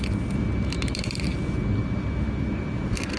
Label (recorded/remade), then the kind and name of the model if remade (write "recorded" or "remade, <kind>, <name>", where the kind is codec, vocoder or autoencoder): recorded